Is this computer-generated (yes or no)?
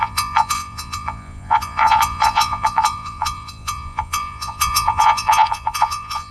yes